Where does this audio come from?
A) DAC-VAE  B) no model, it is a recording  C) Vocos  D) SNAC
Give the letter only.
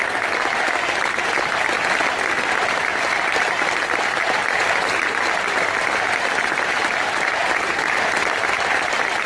B